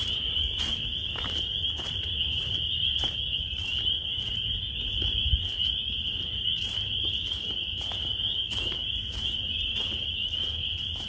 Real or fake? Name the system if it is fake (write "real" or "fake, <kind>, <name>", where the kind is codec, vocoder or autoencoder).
real